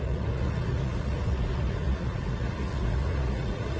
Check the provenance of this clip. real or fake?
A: fake